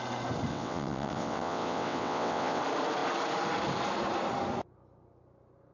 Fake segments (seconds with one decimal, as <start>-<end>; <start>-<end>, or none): 0.5-2.6

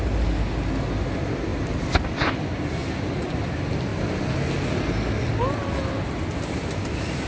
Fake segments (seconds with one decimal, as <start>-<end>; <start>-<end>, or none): none